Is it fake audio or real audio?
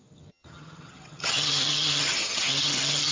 fake